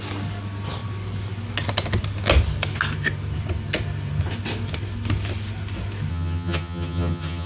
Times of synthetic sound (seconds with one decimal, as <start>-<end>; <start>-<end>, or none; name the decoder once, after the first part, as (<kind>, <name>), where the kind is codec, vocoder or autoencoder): 6.1-7.5 (vocoder, HiFi-GAN)